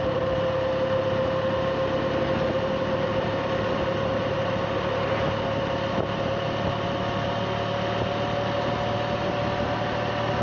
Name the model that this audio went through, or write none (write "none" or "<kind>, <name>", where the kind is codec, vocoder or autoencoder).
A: none